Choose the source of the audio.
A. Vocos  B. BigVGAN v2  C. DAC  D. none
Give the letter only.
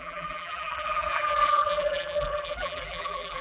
B